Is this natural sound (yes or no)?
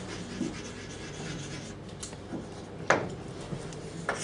yes